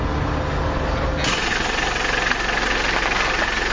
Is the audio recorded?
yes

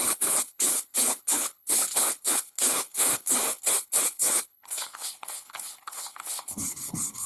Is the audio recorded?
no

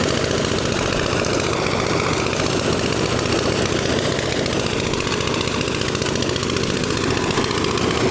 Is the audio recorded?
yes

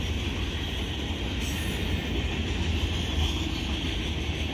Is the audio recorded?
yes